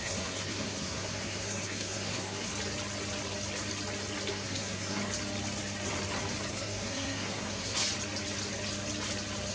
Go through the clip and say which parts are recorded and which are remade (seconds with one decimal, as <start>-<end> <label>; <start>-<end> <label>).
0.0-2.5 remade; 2.5-4.3 recorded; 4.3-5.0 remade; 5.0-6.5 recorded; 6.5-7.8 remade; 7.8-9.5 recorded